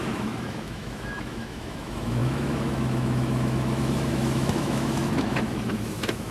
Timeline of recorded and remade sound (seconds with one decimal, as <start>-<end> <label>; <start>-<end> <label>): 0.0-6.3 remade